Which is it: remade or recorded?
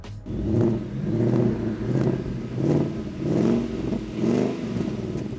recorded